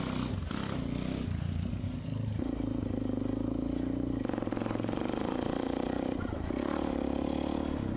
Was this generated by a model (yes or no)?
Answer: no